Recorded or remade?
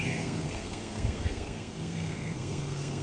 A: remade